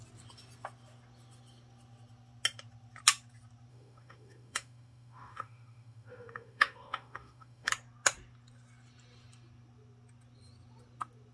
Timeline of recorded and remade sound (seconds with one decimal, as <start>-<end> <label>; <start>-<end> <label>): 0.0-3.7 recorded; 3.7-7.7 remade; 7.7-11.3 recorded